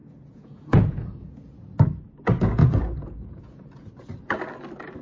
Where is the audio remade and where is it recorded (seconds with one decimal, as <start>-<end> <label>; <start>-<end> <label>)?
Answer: 0.0-1.5 remade; 1.5-2.6 recorded; 2.6-3.9 remade; 3.9-5.0 recorded